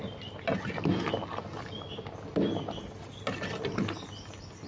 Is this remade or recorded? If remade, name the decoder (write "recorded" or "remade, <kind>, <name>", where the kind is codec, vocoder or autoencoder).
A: recorded